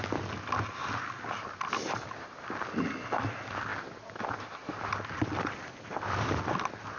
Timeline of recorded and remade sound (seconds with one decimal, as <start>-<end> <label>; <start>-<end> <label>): 0.0-7.0 recorded